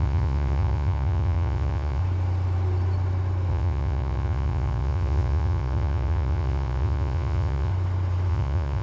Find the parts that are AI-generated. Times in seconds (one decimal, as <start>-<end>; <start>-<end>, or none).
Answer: 0.0-2.0; 3.5-7.7; 8.3-8.8